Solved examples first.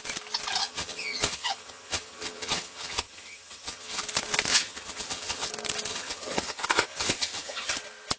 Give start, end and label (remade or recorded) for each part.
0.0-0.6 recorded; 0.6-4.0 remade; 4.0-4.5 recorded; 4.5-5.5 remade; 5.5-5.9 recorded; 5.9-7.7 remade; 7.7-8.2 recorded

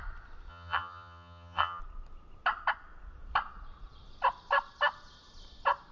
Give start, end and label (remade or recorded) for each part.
0.0-0.5 recorded; 0.5-1.8 remade; 1.8-5.9 recorded

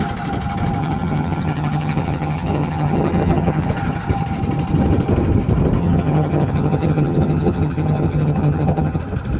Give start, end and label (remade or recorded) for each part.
0.0-0.8 recorded; 0.8-3.7 remade; 3.7-5.8 recorded; 5.8-9.0 remade; 9.0-9.4 recorded

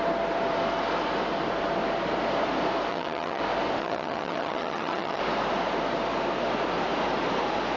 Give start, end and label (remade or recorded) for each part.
0.0-2.9 recorded; 2.9-3.4 remade; 3.4-3.8 recorded; 3.8-5.2 remade; 5.2-7.8 recorded

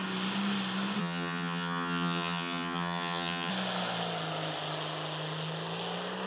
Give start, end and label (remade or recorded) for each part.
0.0-1.0 recorded; 1.0-3.5 remade; 3.5-6.3 recorded

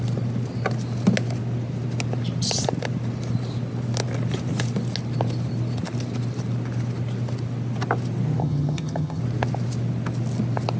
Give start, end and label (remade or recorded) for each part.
0.0-8.4 recorded; 8.4-9.2 remade; 9.2-10.8 recorded

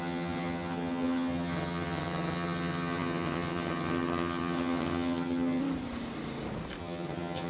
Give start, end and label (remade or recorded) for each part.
0.0-5.6 remade; 5.6-6.8 recorded; 6.8-7.5 remade